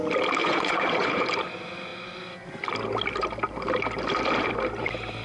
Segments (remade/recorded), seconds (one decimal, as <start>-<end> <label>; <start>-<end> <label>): 0.0-0.4 recorded; 0.4-1.2 remade; 1.2-5.2 recorded